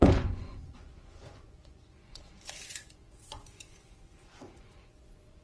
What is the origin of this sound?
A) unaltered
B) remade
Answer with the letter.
B